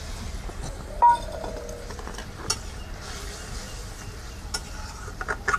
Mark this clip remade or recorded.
recorded